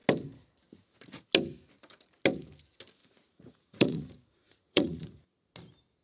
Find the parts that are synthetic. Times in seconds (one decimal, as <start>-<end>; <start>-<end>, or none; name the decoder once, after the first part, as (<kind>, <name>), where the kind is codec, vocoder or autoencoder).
3.0-5.5 (vocoder, Vocos)